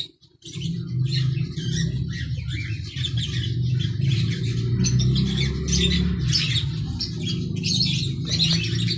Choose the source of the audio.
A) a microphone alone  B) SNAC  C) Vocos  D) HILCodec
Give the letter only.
A